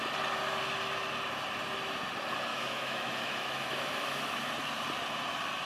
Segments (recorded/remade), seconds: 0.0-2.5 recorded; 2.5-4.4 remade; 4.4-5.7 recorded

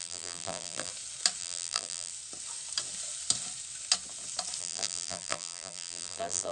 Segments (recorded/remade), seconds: 0.0-0.9 remade; 0.9-1.4 recorded; 1.4-2.1 remade; 2.1-4.6 recorded; 4.6-6.5 remade

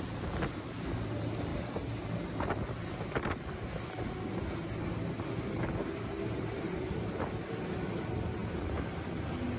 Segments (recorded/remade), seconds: 0.0-9.6 recorded

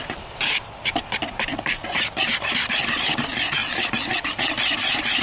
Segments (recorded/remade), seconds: 0.0-5.2 recorded

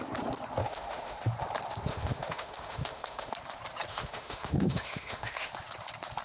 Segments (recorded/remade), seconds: 0.0-0.6 recorded; 0.6-1.2 remade; 1.2-1.9 recorded; 1.9-3.3 remade; 3.3-3.9 recorded; 3.9-5.5 remade; 5.5-6.2 recorded

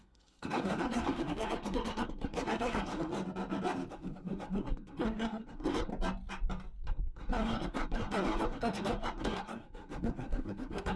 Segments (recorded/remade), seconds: 0.0-3.1 remade; 3.1-3.9 recorded; 3.9-5.9 remade; 5.9-6.8 recorded; 6.8-11.0 remade

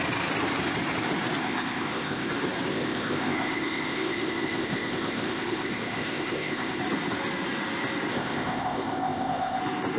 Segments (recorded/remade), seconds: 0.0-1.4 recorded; 1.4-2.3 remade; 2.3-2.7 recorded; 2.7-6.8 remade; 6.8-8.1 recorded; 8.1-9.6 remade; 9.6-10.0 recorded